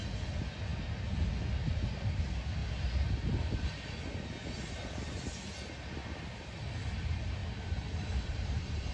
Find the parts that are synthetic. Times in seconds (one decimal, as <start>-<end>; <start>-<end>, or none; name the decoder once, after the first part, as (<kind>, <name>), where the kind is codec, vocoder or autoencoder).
7.4-8.9 (vocoder, BigVGAN v2)

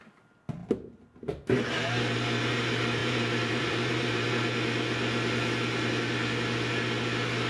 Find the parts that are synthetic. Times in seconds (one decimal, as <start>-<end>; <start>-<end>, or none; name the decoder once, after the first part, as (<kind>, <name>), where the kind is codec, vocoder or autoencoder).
3.0-4.3 (vocoder, BigVGAN v2)

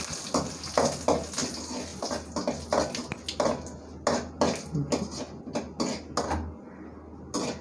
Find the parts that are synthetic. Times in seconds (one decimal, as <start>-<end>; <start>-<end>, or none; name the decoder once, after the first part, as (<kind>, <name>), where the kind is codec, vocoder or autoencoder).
none

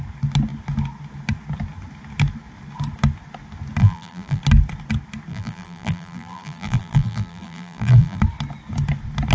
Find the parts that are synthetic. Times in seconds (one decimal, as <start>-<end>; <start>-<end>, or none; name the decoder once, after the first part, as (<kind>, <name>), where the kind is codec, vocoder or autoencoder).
3.8-4.4 (vocoder, BigVGAN v2); 5.3-8.2

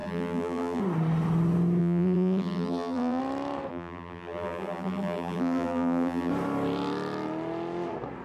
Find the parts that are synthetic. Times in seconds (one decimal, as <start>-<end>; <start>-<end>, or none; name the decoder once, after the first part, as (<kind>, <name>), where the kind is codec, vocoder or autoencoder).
0.0-0.8 (vocoder, BigVGAN v2); 1.8-3.2; 3.7-6.3

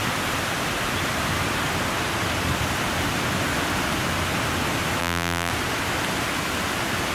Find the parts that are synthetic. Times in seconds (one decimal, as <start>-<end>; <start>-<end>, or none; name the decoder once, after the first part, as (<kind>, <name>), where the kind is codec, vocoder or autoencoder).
5.0-5.5 (vocoder, BigVGAN v2)

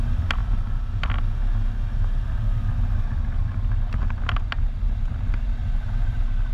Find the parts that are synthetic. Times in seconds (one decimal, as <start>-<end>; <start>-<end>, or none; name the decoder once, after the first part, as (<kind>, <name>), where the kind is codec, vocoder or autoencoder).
5.6-6.5 (vocoder, BigVGAN v2)